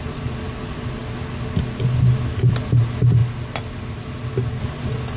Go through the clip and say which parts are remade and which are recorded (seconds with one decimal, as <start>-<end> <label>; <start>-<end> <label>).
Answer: 0.0-5.2 recorded